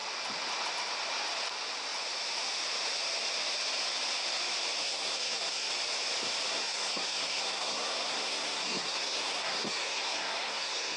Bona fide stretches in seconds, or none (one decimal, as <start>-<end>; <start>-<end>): 0.0-4.8; 5.7-6.5